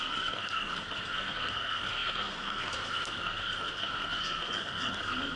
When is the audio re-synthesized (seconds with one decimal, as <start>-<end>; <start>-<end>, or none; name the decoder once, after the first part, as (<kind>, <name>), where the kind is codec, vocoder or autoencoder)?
0.0-5.4 (codec, SNAC)